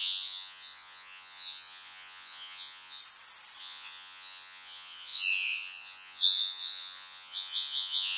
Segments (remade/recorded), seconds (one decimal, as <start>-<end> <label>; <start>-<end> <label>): 0.0-3.0 remade; 3.0-3.6 recorded; 3.6-8.2 remade